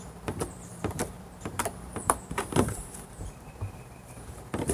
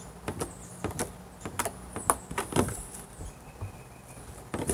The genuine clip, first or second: second